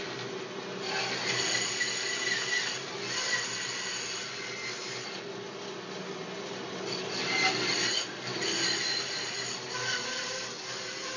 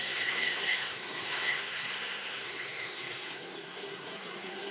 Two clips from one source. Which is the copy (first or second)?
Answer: second